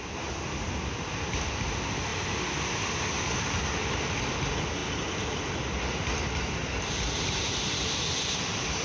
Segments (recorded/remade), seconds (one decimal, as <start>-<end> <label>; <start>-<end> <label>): 0.0-6.6 recorded; 6.6-8.0 remade; 8.0-8.8 recorded